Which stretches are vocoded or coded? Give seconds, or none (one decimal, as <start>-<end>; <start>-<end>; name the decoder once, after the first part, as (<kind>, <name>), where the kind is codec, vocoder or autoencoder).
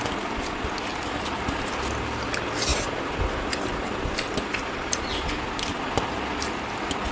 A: 0.9-1.6 (vocoder, BigVGAN v2)